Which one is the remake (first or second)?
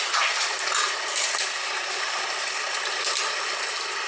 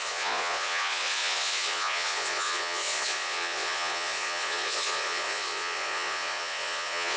second